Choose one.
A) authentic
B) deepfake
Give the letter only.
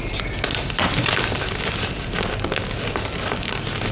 A